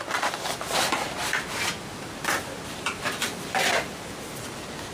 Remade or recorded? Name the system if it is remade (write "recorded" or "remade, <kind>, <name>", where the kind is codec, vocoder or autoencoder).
recorded